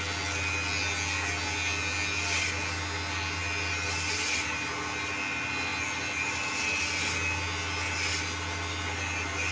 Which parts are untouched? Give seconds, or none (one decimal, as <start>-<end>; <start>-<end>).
0.0-9.5